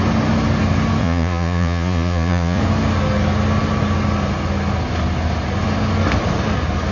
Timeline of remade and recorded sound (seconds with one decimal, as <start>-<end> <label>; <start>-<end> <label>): 0.0-1.0 recorded; 1.0-2.6 remade; 2.6-6.9 recorded